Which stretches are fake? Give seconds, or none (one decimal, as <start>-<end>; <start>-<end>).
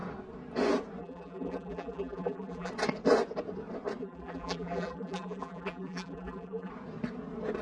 1.0-2.7; 4.0-6.7